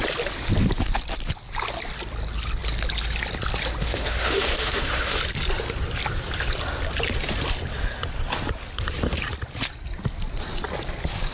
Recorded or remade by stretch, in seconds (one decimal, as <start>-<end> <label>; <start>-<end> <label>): 0.0-3.8 recorded; 3.8-5.2 remade; 5.2-11.3 recorded